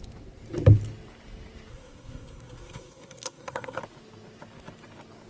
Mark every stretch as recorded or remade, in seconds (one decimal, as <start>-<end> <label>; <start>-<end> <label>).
0.0-1.7 recorded; 1.7-3.8 remade; 3.8-5.3 recorded